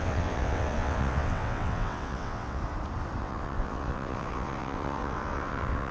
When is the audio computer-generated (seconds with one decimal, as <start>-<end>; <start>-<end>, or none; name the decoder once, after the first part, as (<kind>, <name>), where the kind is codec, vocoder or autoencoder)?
0.0-2.6 (vocoder, WaveNeXt); 3.2-5.9